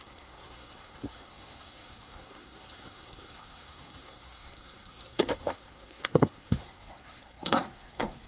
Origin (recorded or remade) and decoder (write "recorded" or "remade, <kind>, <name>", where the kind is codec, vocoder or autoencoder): remade, codec, SNAC